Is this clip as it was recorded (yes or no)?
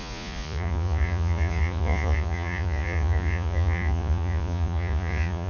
no